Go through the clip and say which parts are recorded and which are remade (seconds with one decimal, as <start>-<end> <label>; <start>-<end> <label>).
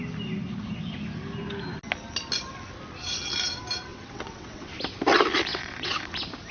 0.0-3.9 recorded; 3.9-4.7 remade; 4.7-5.5 recorded; 5.5-6.1 remade; 6.1-6.5 recorded